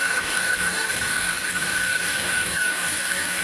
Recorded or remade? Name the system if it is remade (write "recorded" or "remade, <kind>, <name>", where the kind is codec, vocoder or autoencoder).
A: remade, codec, DAC